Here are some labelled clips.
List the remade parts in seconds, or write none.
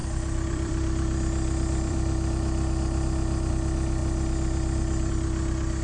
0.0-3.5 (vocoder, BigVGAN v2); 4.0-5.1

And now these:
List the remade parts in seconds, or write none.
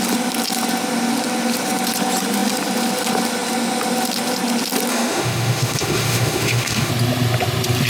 4.9-6.9 (autoencoder, DAC-VAE)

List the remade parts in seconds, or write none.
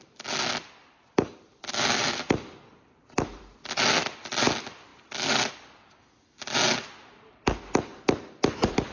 4.9-6.1 (vocoder, BigVGAN v2)